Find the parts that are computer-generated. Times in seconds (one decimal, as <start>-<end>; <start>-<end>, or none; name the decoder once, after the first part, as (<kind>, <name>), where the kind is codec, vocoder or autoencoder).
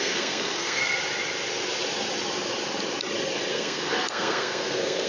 0.0-0.8 (codec, SNAC); 3.5-5.1